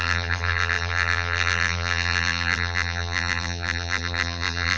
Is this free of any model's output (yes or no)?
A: no